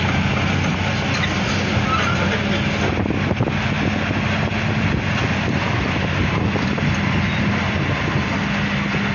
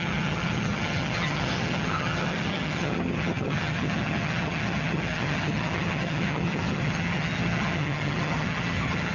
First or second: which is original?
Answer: first